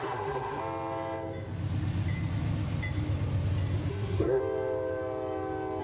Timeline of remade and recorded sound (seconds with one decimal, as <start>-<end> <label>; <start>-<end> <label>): 0.0-0.6 remade; 0.6-3.9 recorded; 3.9-4.4 remade; 4.4-5.8 recorded